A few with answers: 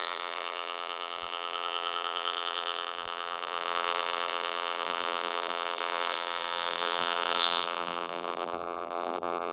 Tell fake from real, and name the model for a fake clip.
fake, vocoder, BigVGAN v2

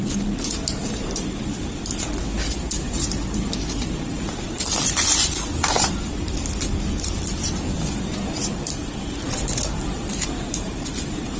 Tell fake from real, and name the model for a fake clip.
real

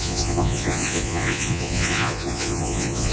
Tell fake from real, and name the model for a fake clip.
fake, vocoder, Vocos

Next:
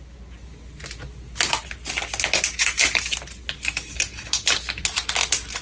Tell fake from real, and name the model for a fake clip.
real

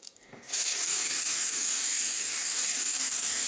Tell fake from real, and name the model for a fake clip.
fake, codec, DAC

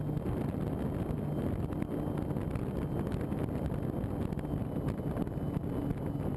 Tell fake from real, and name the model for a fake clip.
real